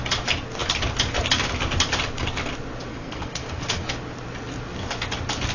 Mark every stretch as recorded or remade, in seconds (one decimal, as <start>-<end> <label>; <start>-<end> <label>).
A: 0.0-2.9 recorded; 2.9-3.9 remade; 3.9-5.5 recorded